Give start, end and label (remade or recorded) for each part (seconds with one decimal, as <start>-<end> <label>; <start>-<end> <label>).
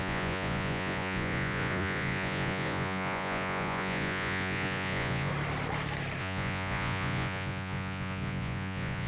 0.0-5.3 remade; 5.3-6.2 recorded; 6.2-9.1 remade